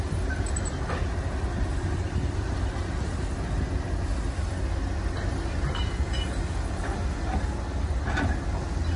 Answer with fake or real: real